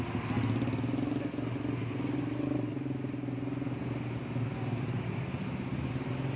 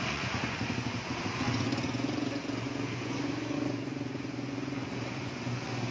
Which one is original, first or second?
first